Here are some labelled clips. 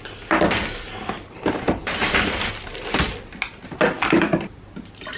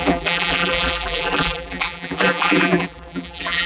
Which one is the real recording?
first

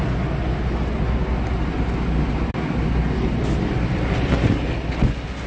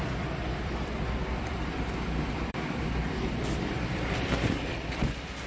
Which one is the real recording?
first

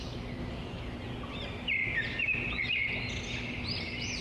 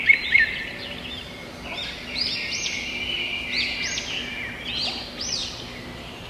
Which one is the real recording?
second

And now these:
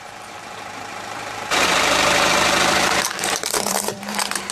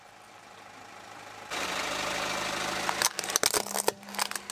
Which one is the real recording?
second